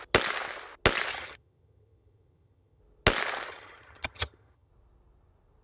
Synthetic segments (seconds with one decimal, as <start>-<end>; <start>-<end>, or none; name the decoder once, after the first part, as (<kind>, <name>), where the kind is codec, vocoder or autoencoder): 1.1-2.8 (vocoder, HiFi-GAN); 3.5-4.7